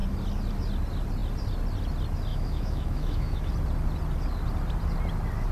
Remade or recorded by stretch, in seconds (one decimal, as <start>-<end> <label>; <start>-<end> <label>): 0.0-2.3 recorded; 2.3-3.5 remade; 3.5-5.5 recorded